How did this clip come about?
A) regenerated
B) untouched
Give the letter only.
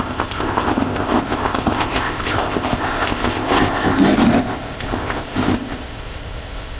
A